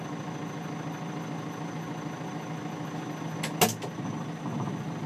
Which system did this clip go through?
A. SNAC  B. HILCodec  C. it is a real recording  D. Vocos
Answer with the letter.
C